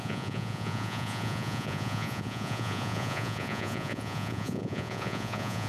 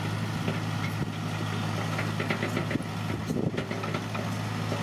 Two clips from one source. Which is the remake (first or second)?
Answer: first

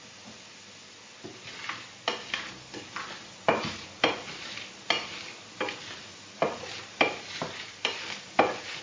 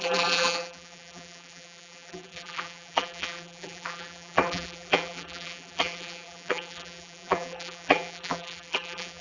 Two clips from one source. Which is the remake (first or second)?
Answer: second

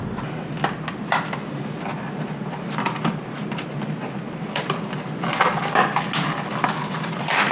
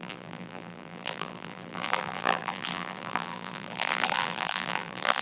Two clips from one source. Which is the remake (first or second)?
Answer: second